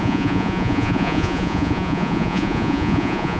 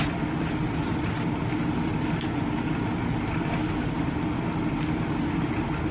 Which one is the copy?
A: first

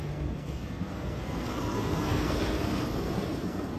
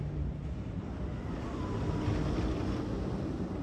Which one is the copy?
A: first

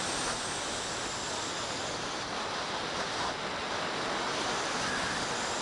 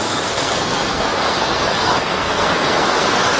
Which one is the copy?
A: second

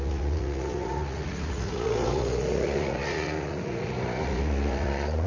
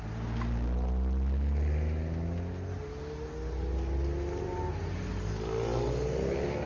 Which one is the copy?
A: first